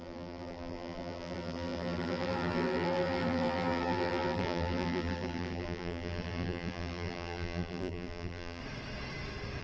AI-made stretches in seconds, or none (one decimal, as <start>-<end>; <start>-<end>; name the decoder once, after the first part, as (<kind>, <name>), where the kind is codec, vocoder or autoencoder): 0.0-8.6 (vocoder, BigVGAN v2)